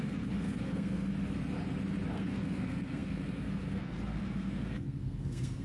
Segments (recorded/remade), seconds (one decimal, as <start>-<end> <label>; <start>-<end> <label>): 0.0-1.1 remade; 1.1-2.1 recorded; 2.1-5.6 remade